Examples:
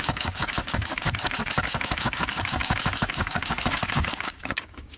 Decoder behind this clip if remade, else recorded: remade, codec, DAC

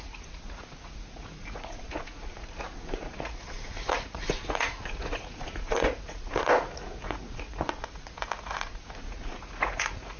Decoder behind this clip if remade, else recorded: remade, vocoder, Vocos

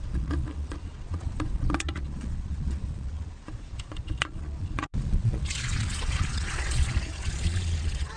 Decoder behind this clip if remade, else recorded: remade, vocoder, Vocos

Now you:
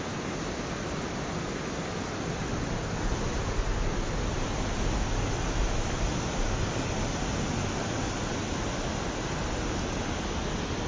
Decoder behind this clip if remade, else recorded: recorded